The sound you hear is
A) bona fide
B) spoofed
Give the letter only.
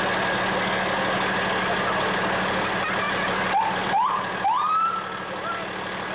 A